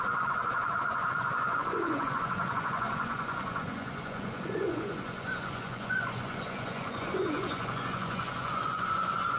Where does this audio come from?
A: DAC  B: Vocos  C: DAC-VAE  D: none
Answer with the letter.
B